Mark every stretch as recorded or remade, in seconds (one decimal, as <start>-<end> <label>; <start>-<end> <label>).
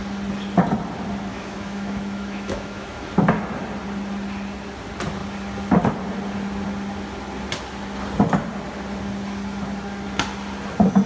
0.0-1.3 recorded; 1.3-3.1 remade; 3.1-11.1 recorded